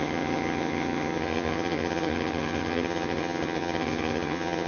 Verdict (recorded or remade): remade